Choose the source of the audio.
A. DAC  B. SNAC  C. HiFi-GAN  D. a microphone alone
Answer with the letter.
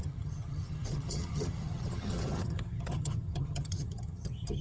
C